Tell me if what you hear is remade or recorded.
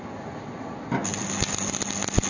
recorded